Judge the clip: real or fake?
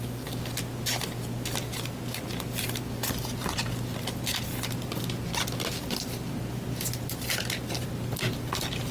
real